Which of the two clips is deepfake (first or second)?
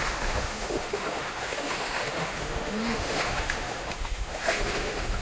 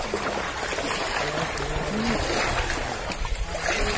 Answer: first